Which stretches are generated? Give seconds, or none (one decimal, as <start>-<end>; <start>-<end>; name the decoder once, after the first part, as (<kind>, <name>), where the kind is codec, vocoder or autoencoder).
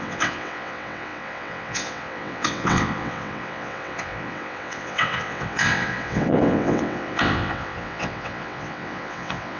0.0-9.6 (vocoder, WaveNeXt)